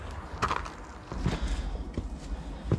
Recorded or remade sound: recorded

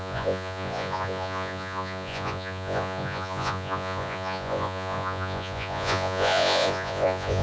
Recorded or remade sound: remade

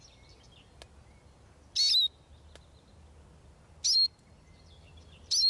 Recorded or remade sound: recorded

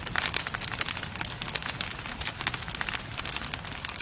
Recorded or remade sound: recorded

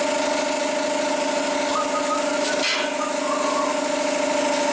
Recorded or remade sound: recorded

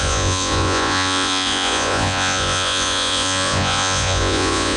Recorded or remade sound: remade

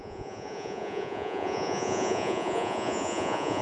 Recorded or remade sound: remade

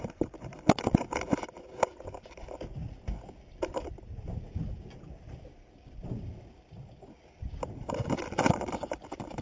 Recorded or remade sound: recorded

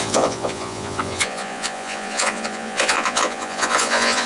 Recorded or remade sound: remade